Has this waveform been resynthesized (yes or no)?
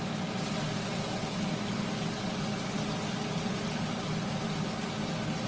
no